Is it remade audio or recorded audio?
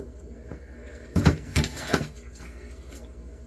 remade